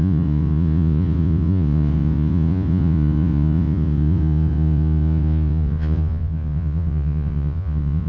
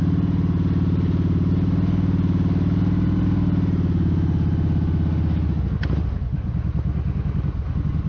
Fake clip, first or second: first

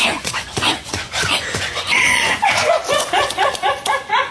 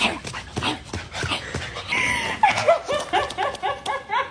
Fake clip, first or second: first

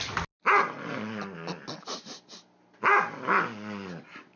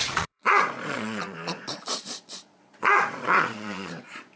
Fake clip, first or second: second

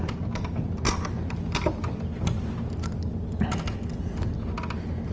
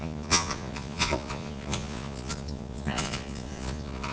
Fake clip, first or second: second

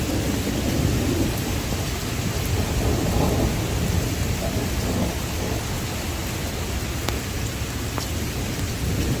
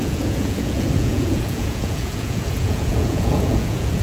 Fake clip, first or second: second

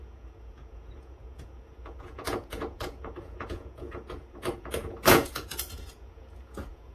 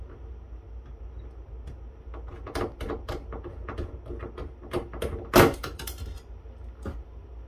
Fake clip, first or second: first